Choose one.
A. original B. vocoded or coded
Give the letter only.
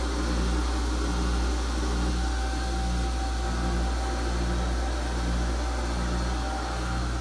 A